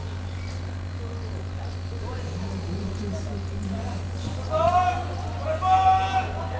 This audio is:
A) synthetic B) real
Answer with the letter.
B